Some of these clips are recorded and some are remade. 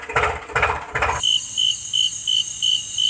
recorded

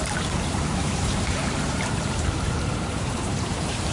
remade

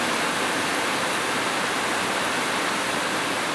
recorded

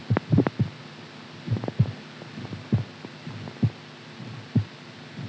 recorded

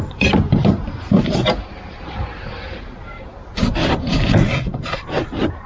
remade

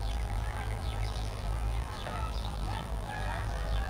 remade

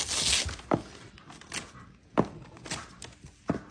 recorded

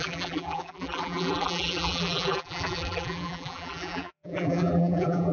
remade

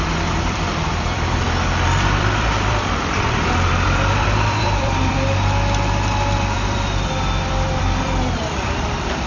remade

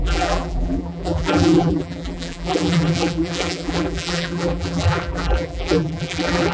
remade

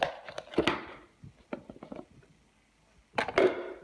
recorded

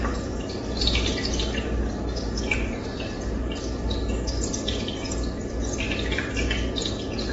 recorded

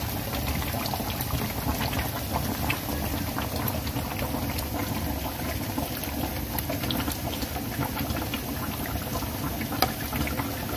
recorded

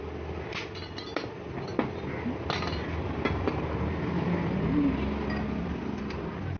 recorded